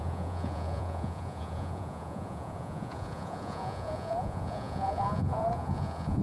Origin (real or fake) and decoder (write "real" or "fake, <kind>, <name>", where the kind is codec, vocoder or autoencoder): fake, vocoder, Vocos